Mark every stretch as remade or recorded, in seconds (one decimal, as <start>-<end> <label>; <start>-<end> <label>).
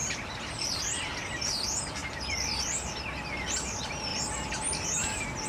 0.0-0.8 remade; 0.8-5.5 recorded